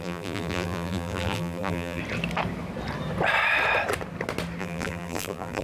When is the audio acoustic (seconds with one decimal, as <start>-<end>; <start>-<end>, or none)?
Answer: 2.0-4.6